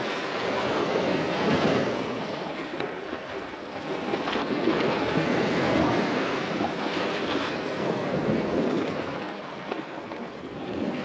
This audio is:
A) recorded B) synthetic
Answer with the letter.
B